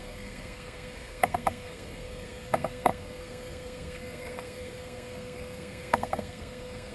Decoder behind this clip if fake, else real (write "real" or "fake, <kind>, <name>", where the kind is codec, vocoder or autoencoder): fake, codec, SNAC